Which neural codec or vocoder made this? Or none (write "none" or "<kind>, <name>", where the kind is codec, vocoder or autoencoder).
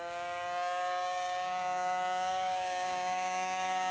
codec, DAC